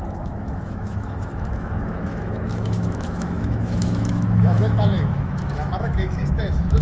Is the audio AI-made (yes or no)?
yes